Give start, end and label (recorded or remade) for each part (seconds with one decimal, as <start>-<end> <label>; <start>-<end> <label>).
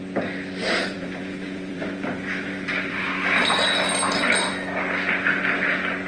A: 0.0-0.6 recorded; 0.6-3.1 remade; 3.1-6.1 recorded